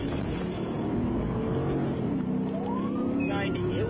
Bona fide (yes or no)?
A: yes